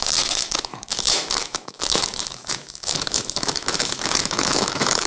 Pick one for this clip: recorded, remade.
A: remade